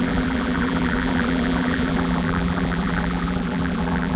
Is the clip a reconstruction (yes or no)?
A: yes